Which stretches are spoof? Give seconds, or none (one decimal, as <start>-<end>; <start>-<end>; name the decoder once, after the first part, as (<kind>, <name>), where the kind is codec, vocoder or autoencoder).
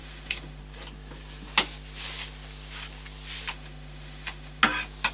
0.0-0.6 (autoencoder, DAC-VAE); 3.5-4.6